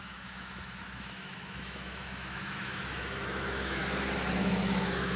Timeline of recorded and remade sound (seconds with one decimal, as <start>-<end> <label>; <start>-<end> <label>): 0.0-3.8 remade; 3.8-4.4 recorded; 4.4-5.2 remade